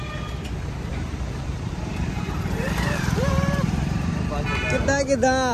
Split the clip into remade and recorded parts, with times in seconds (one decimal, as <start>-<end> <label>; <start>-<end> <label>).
0.0-0.9 recorded; 0.9-4.2 remade; 4.2-5.5 recorded